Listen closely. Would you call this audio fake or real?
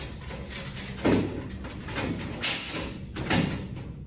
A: real